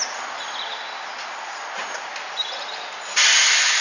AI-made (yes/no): no